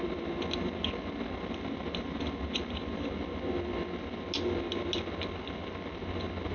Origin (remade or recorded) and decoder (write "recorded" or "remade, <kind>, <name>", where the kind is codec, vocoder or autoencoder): recorded